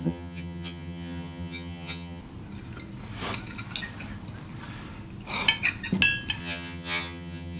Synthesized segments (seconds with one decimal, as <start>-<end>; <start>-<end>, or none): 0.0-2.2; 6.4-7.6